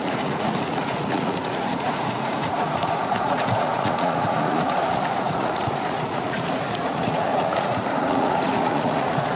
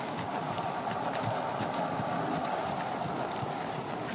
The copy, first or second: first